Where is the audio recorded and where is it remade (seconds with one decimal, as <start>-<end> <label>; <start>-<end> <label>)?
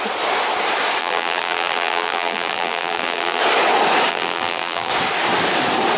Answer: 0.0-1.0 recorded; 1.0-3.4 remade; 3.4-4.1 recorded; 4.1-4.9 remade; 4.9-6.0 recorded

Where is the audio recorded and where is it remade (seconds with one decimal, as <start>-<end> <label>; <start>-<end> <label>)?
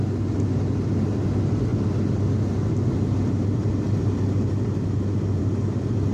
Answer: 0.0-6.1 recorded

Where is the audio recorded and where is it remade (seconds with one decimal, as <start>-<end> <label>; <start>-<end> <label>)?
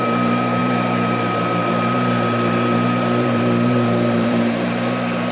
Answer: 0.0-5.3 remade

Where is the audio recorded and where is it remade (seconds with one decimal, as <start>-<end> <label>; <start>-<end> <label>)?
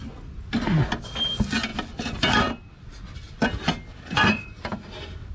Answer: 0.0-5.3 recorded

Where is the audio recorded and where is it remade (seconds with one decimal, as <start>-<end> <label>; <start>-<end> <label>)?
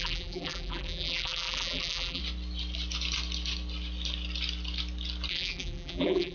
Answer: 0.0-2.2 remade; 2.2-5.3 recorded; 5.3-6.3 remade